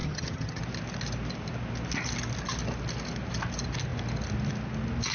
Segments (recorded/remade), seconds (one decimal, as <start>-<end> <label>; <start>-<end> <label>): 0.0-0.6 remade; 0.6-5.1 recorded